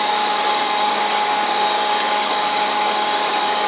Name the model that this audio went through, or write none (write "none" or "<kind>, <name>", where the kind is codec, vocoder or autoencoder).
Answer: codec, DAC